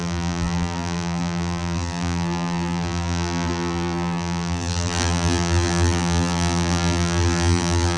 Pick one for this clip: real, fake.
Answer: fake